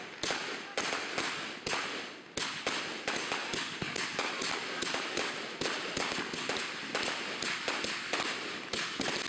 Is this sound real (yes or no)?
yes